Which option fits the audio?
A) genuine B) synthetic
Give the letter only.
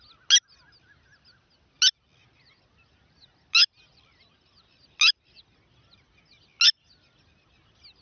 A